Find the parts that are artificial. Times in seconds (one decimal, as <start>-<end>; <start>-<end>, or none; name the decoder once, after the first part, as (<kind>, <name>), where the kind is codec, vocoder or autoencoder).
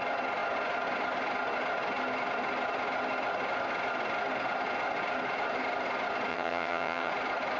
6.3-7.1 (vocoder, HiFi-GAN)